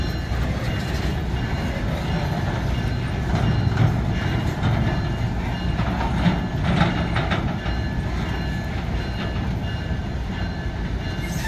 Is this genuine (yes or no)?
yes